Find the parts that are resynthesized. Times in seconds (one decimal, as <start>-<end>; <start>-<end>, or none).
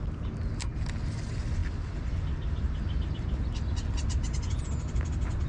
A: none